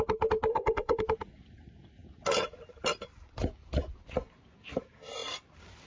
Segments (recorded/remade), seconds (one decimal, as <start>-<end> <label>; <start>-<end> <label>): 0.0-0.5 recorded; 0.5-1.0 remade; 1.0-5.9 recorded